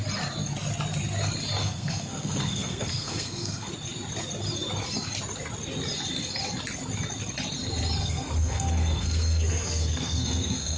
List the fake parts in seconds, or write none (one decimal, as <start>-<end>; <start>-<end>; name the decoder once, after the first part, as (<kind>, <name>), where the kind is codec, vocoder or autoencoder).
1.6-3.7 (codec, SNAC); 8.0-10.8